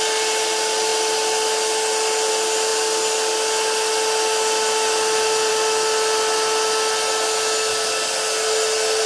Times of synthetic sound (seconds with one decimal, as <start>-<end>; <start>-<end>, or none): none